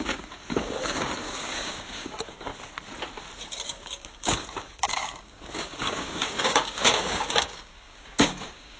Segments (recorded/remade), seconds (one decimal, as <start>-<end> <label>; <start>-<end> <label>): 0.0-2.5 remade; 2.5-3.8 recorded; 3.8-8.8 remade